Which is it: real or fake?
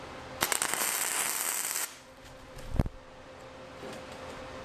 real